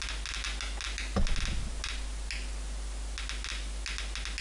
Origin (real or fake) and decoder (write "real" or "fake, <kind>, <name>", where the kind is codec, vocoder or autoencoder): real